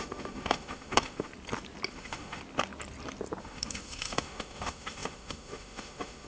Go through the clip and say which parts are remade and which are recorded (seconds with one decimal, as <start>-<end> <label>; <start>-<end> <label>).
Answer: 0.0-1.3 remade; 1.3-1.9 recorded; 1.9-2.4 remade; 2.4-3.4 recorded; 3.4-6.3 remade